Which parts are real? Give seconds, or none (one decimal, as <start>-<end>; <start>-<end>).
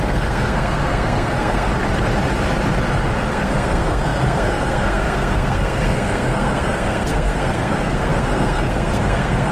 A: 1.7-3.3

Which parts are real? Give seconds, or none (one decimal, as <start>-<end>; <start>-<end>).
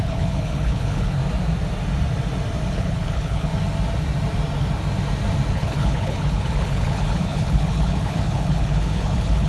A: 1.2-2.7; 3.5-5.5